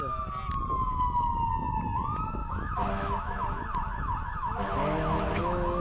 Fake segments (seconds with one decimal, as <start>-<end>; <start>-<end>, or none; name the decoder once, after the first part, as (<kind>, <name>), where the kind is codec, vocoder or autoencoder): 2.4-3.4 (autoencoder, DAC-VAE); 4.4-5.8

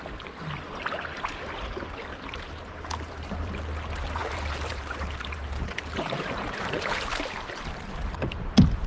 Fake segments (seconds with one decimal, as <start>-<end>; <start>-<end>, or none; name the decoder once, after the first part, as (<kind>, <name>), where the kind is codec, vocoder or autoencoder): 2.1-3.5 (vocoder, BigVGAN v2); 4.2-7.5

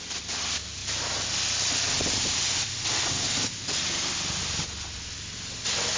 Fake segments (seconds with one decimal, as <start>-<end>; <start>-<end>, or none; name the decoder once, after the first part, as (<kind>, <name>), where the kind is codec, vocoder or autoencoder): none

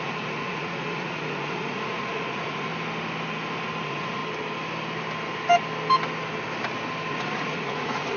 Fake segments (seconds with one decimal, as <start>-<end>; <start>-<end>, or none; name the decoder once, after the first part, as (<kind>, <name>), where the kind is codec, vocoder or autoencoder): 0.0-2.7 (vocoder, Vocos); 3.8-4.2; 7.1-8.2

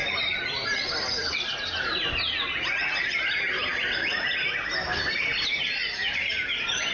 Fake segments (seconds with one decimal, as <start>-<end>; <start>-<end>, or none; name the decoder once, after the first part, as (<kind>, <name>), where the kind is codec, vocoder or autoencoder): 0.0-1.3 (vocoder, BigVGAN v2); 5.3-6.9

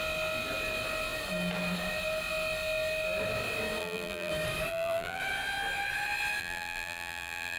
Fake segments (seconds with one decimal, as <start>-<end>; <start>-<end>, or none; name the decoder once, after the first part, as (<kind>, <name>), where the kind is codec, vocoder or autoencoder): 3.8-4.3 (vocoder, BigVGAN v2); 4.7-5.2; 6.4-7.6